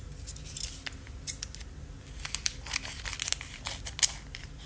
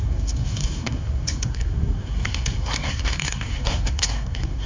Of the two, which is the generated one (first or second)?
second